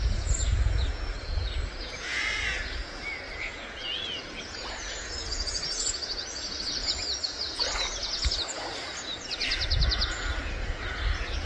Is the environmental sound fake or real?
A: fake